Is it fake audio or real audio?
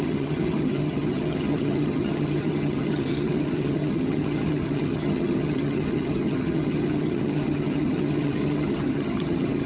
fake